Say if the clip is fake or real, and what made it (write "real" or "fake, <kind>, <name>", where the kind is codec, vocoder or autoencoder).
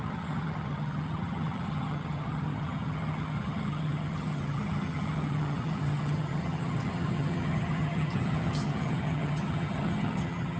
fake, vocoder, HiFi-GAN